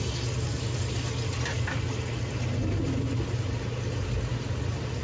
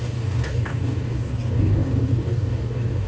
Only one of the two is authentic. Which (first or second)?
first